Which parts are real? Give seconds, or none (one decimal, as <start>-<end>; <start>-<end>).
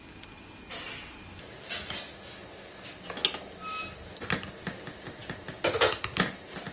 0.0-6.7